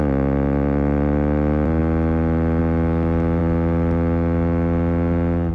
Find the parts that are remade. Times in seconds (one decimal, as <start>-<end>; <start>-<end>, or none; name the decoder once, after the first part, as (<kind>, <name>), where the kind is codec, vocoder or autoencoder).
none